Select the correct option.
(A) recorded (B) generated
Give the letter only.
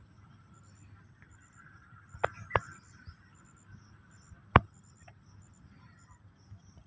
A